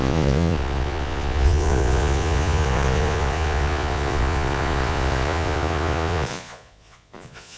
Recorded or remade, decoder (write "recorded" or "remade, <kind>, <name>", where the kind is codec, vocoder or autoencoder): remade, vocoder, Vocos